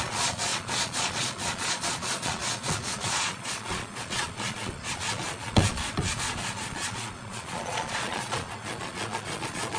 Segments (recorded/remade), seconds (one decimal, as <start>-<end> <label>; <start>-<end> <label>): 0.0-9.8 remade